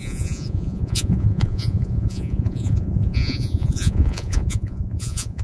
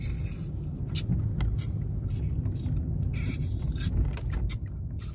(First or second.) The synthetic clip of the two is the first